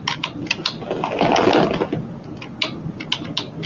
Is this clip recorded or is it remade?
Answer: recorded